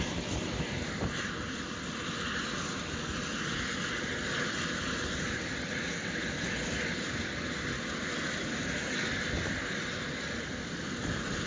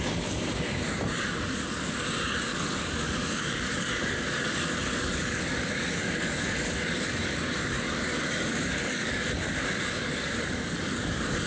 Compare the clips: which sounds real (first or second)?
first